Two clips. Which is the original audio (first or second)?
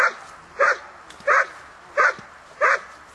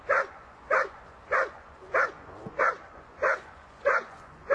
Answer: first